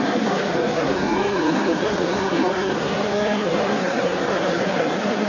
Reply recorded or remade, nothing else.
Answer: remade